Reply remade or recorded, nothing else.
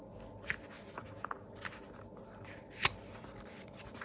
recorded